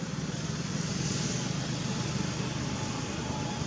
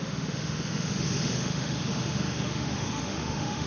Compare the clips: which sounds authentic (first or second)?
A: first